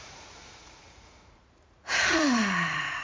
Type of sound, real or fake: fake